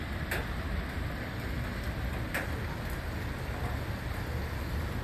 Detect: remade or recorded recorded